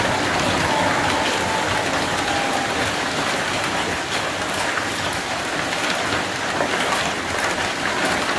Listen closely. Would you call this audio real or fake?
real